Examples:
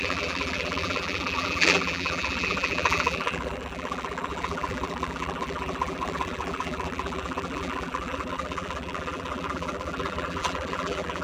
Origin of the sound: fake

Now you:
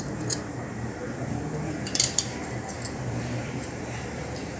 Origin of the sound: fake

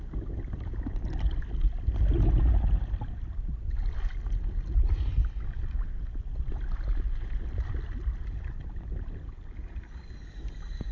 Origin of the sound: real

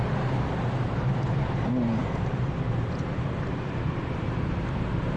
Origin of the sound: fake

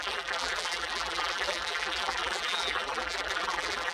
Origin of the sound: fake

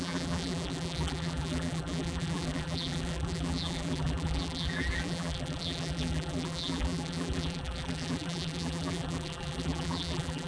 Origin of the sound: fake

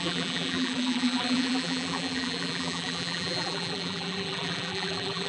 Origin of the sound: fake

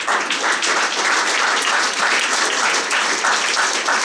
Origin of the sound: real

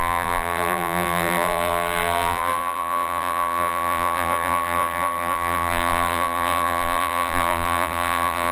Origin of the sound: fake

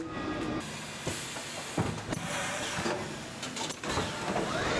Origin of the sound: real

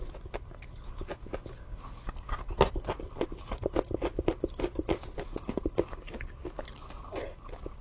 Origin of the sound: real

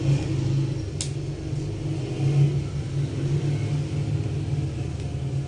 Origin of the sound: real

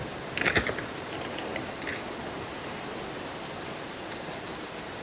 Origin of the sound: real